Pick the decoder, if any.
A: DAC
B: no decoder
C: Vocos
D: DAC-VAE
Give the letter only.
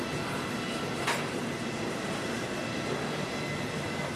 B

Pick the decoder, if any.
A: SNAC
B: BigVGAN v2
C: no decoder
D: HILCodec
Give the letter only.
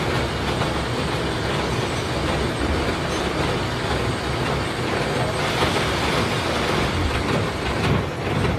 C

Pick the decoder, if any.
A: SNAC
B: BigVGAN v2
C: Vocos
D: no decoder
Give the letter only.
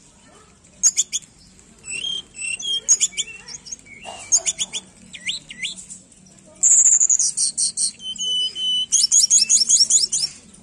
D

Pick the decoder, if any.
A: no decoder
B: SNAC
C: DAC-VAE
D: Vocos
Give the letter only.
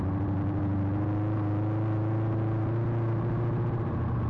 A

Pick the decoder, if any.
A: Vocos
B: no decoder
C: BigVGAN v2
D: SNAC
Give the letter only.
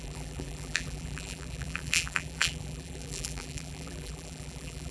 C